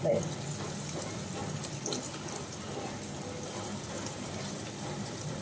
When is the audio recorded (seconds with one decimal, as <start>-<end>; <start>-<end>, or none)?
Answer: 0.0-5.4